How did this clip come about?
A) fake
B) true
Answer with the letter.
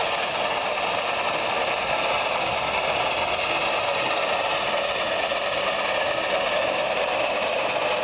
B